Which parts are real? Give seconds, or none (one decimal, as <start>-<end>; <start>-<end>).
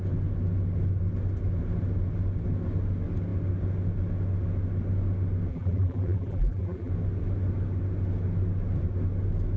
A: 0.0-5.5; 6.9-9.6